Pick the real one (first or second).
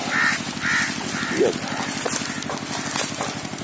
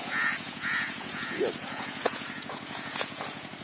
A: first